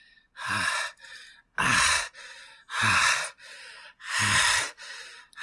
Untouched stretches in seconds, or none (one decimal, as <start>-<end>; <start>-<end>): 2.8-3.6